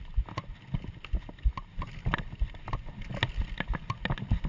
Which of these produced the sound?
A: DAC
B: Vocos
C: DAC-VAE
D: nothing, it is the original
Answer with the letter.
D